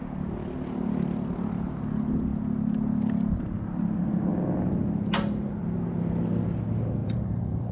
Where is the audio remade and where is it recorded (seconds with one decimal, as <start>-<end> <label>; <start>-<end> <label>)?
0.0-7.0 recorded; 7.0-7.7 remade